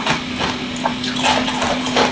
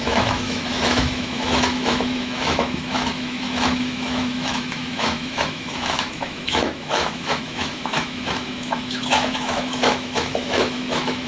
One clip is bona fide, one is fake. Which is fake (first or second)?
second